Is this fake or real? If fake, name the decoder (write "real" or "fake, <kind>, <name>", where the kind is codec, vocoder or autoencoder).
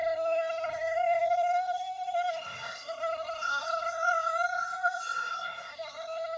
fake, codec, SNAC